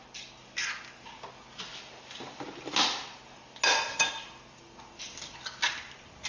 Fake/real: real